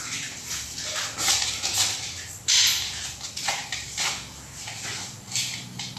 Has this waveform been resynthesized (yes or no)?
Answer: no